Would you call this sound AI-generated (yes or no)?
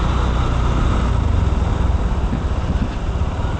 no